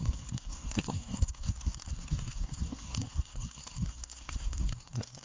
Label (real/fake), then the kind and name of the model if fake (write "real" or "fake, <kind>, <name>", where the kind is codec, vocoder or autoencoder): fake, codec, SNAC